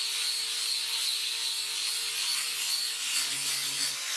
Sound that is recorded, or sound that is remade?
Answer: recorded